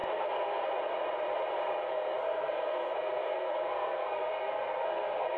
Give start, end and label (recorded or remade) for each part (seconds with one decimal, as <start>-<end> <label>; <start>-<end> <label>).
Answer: 0.0-0.7 remade; 0.7-1.9 recorded; 1.9-5.4 remade